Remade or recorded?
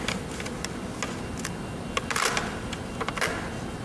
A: recorded